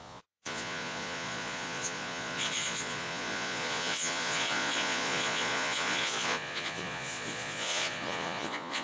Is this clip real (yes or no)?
no